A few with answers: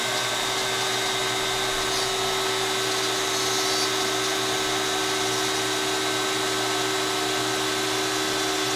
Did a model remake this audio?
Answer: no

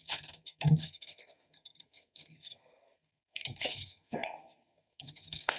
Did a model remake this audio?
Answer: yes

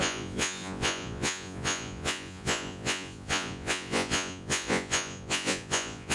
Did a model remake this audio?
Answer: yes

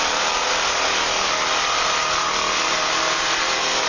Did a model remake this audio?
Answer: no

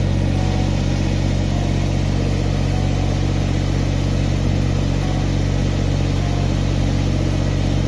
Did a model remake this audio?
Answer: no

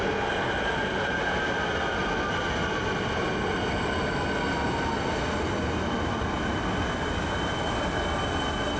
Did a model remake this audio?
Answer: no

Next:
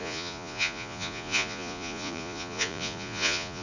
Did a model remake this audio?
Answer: yes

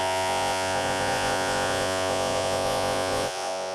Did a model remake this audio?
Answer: yes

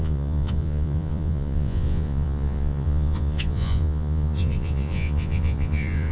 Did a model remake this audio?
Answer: yes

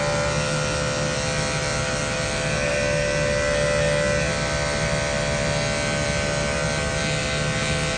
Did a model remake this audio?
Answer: no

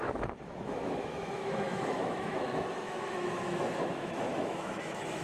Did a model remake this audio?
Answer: yes